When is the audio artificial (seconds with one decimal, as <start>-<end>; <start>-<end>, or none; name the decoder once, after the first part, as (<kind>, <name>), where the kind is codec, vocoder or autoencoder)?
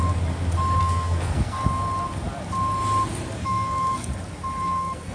0.8-1.6 (codec, SNAC); 3.4-4.1; 4.6-5.1